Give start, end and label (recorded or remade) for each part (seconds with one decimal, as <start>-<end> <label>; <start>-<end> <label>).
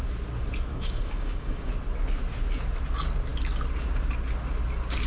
0.0-0.7 recorded; 0.7-1.7 remade; 1.7-5.1 recorded